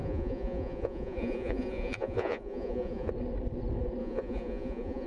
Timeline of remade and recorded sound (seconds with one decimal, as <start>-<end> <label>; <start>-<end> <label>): 0.0-3.1 remade; 3.1-4.0 recorded; 4.0-5.1 remade